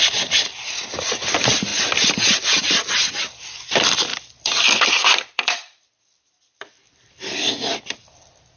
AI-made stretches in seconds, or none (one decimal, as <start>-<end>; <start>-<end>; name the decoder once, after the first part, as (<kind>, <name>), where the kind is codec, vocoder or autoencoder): 4.1-7.5 (vocoder, BigVGAN v2)